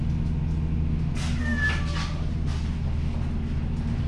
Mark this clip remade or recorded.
recorded